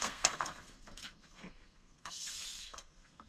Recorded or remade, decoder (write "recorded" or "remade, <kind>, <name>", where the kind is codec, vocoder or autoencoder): remade, codec, SNAC